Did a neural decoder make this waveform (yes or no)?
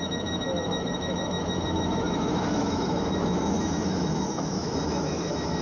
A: yes